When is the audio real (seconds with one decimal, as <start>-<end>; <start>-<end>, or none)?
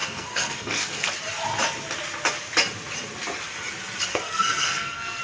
1.1-4.1